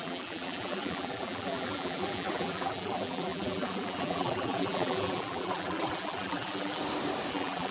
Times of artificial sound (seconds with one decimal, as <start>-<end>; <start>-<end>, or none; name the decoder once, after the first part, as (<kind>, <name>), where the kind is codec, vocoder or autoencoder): 0.0-6.8 (vocoder, BigVGAN v2); 7.3-7.7